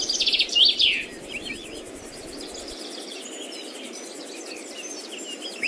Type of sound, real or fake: real